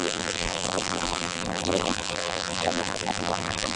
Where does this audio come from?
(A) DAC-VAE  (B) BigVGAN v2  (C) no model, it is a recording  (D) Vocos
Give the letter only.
B